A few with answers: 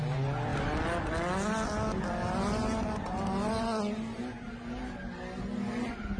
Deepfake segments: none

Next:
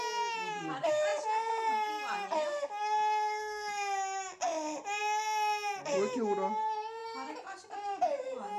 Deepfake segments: none